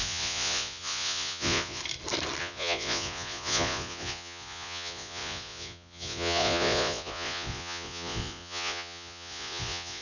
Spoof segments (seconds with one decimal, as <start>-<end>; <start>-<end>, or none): 0.0-1.8; 2.4-10.0